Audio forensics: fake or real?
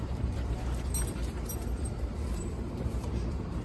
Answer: fake